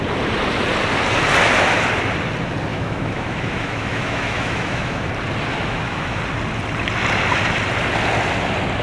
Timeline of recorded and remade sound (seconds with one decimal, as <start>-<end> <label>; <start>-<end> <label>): 0.0-2.7 recorded; 2.7-5.1 remade; 5.1-5.5 recorded; 5.5-6.2 remade; 6.2-8.8 recorded